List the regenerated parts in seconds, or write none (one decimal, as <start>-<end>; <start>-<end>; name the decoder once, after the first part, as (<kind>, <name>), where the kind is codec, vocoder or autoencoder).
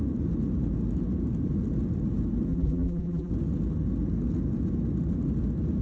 2.5-3.3 (vocoder, BigVGAN v2)